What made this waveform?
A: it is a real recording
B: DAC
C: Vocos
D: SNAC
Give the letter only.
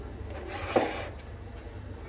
A